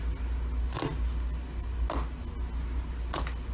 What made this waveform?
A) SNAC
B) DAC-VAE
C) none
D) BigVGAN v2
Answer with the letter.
C